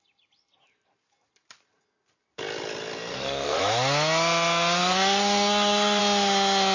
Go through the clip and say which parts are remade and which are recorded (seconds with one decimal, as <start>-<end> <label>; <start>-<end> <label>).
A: 0.0-3.1 recorded; 3.1-3.6 remade; 3.6-4.8 recorded; 4.8-6.0 remade; 6.0-6.7 recorded